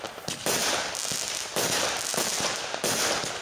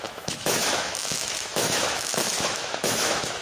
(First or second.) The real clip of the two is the first